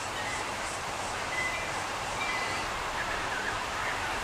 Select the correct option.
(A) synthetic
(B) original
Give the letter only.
A